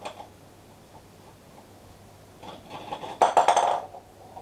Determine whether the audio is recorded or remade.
recorded